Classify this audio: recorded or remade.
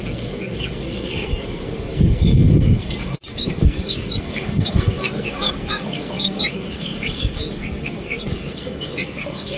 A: remade